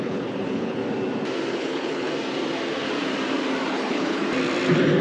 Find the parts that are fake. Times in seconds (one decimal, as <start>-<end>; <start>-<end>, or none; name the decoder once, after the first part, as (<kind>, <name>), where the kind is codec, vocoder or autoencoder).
0.0-0.8 (codec, HILCodec); 1.5-2.1; 3.7-4.2